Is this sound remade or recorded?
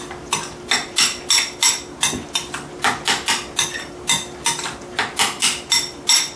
recorded